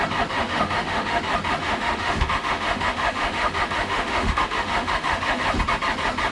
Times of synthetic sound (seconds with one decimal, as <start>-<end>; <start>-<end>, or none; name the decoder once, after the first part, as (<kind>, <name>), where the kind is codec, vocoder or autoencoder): 0.4-1.2 (autoencoder, DAC-VAE); 1.6-5.4